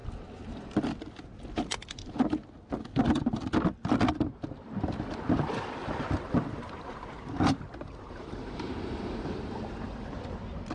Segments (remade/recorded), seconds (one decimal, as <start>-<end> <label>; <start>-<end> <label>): 0.0-5.8 recorded; 5.8-10.1 remade; 10.1-10.7 recorded